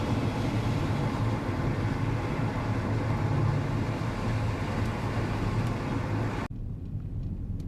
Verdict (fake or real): real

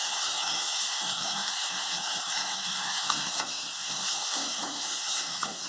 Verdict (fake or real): fake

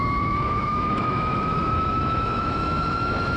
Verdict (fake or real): fake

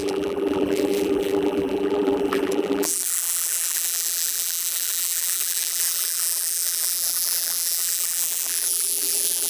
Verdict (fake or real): fake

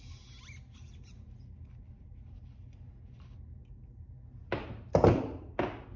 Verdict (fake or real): real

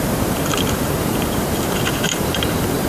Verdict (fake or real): fake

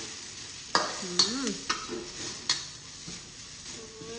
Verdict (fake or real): real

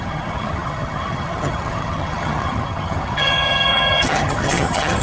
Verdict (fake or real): fake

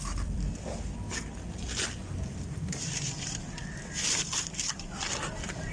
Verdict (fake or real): fake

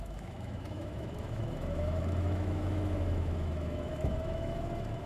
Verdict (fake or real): fake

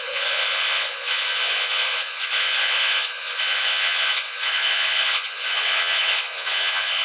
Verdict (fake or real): fake